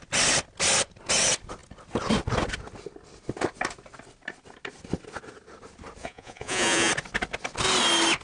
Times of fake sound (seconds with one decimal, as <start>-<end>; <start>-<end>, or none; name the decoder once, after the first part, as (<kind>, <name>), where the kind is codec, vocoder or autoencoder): 6.0-6.9 (vocoder, Vocos)